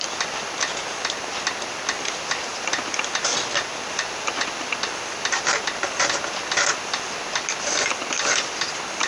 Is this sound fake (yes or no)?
no